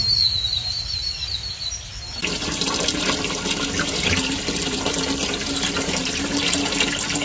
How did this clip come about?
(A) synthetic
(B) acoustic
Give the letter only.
B